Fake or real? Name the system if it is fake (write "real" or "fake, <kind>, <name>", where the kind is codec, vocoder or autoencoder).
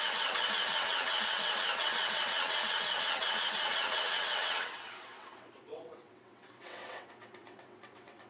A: fake, vocoder, WaveNeXt